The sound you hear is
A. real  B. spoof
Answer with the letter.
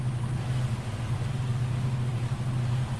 A